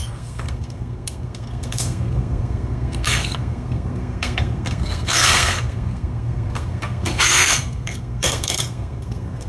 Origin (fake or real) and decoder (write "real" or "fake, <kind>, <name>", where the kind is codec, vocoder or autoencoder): fake, codec, SNAC